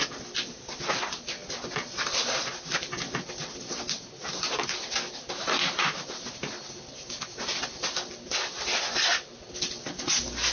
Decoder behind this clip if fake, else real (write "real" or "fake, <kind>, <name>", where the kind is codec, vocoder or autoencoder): real